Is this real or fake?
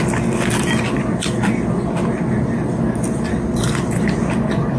real